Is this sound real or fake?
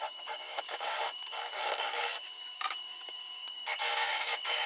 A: fake